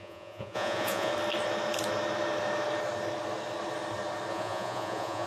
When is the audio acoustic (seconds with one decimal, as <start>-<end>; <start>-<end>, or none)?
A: 1.1-4.3